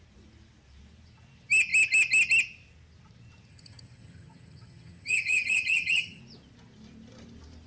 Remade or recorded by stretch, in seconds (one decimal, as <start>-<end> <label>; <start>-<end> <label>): 0.0-3.5 recorded; 3.5-6.2 remade; 6.2-7.7 recorded